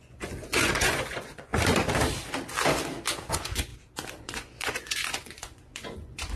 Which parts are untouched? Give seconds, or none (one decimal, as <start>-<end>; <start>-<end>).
1.5-3.3; 3.7-4.2